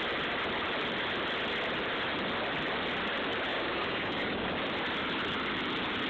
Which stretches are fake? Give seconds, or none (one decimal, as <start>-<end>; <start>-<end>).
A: 3.5-4.6